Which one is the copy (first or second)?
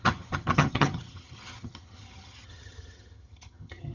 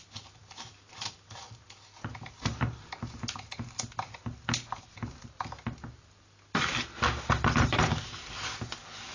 first